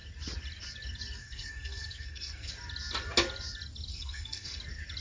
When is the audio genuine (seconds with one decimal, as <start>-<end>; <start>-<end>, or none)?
0.0-1.2; 2.5-3.9; 4.6-5.0